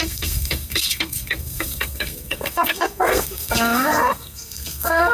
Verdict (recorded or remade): remade